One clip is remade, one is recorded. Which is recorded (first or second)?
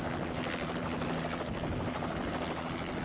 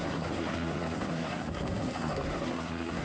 first